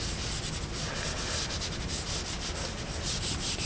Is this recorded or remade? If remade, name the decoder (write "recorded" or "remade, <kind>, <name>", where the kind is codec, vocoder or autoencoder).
recorded